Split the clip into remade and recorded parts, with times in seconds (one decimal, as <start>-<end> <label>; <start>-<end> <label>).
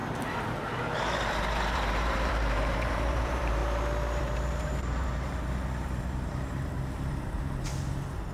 0.0-3.6 remade; 3.6-4.2 recorded; 4.2-7.7 remade; 7.7-8.3 recorded